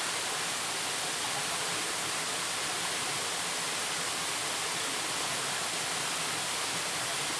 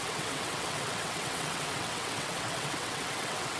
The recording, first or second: first